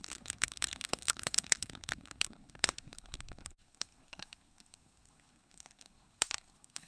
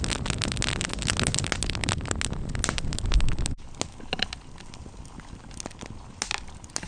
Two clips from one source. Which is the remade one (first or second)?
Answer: first